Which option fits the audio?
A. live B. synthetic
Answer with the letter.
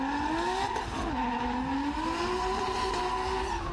A